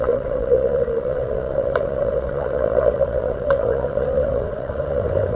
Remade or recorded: remade